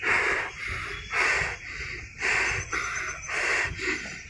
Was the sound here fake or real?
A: real